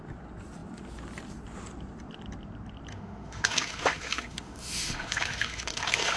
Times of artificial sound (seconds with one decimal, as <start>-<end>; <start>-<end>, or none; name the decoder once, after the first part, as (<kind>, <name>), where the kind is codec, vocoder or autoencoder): 2.9-6.2 (autoencoder, DAC-VAE)